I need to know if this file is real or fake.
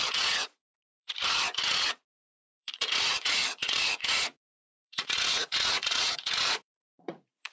fake